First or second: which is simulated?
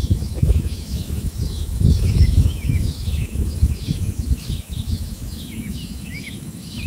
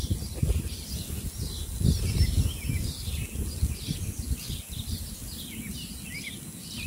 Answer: first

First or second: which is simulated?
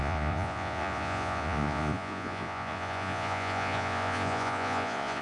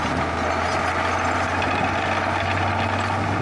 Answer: first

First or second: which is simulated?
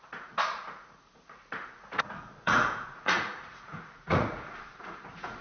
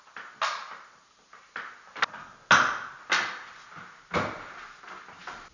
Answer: first